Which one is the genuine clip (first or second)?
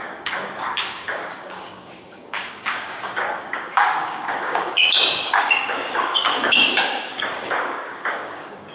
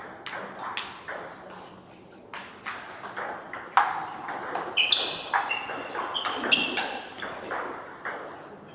second